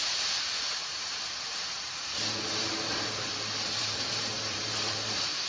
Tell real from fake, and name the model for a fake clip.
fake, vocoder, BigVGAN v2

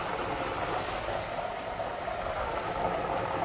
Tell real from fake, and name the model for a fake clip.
real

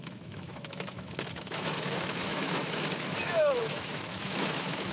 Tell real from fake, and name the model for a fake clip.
fake, autoencoder, DAC-VAE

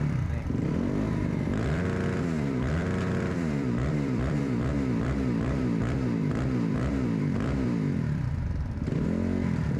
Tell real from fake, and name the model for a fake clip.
fake, vocoder, BigVGAN v2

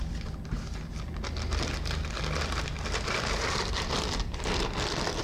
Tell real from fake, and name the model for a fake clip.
real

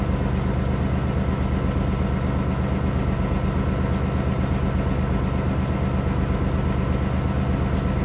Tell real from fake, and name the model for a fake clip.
real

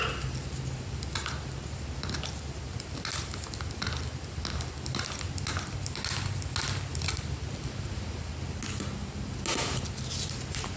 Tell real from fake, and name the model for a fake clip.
real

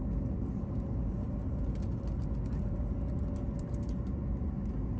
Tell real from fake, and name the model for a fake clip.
real